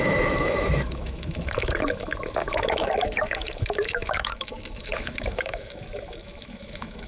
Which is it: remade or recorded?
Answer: remade